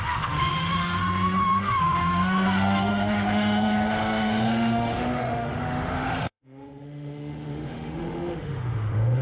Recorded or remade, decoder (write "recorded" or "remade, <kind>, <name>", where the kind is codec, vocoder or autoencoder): remade, autoencoder, DAC-VAE